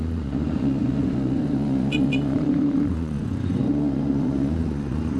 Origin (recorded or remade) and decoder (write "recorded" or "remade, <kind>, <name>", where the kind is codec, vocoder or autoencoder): remade, vocoder, Vocos